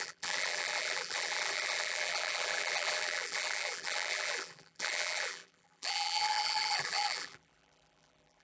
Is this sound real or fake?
fake